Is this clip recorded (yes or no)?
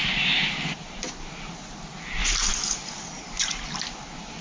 yes